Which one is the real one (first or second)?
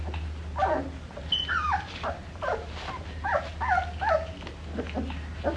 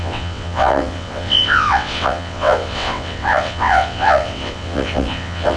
first